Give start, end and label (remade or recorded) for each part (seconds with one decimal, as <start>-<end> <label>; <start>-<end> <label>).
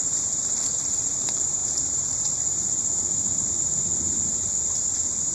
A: 0.0-1.6 recorded; 1.6-3.5 remade; 3.5-5.3 recorded